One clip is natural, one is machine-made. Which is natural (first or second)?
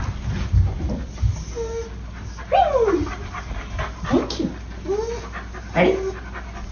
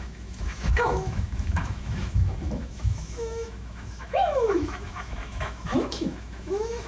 first